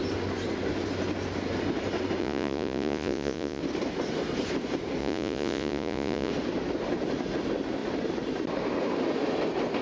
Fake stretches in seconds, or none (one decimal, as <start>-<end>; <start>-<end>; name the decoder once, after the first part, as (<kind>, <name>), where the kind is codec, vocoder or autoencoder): 2.2-3.6 (vocoder, Vocos); 5.0-6.3